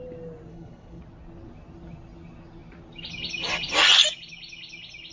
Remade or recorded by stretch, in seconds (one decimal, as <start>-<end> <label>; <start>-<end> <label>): 0.0-0.5 recorded; 0.5-1.0 remade; 1.0-5.1 recorded